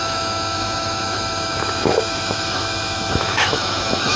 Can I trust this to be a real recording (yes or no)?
no